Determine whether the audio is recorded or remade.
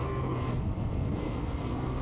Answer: remade